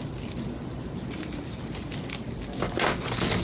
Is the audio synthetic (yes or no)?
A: no